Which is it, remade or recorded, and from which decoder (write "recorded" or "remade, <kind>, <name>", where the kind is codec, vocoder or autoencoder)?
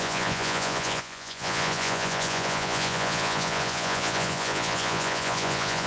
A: remade, vocoder, Vocos